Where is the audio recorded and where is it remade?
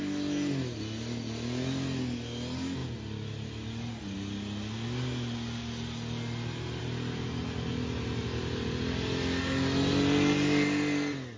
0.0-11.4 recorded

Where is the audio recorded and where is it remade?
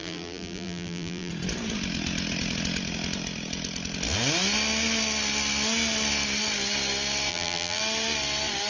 0.0-1.3 remade; 1.3-7.3 recorded; 7.3-7.8 remade; 7.8-8.7 recorded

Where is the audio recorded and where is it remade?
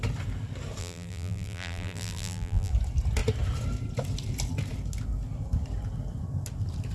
0.0-0.8 recorded; 0.8-2.7 remade; 2.7-6.9 recorded